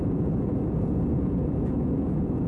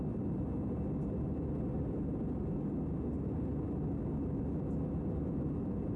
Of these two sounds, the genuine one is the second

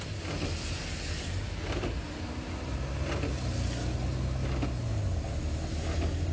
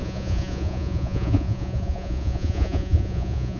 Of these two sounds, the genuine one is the first